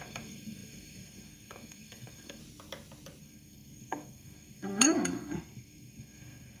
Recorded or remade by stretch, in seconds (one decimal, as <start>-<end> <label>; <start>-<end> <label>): 0.0-2.4 remade; 2.4-3.2 recorded; 3.2-6.6 remade